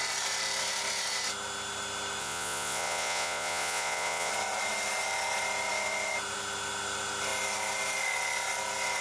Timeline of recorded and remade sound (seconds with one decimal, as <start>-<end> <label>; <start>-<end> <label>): 0.0-2.2 recorded; 2.2-4.3 remade; 4.3-9.0 recorded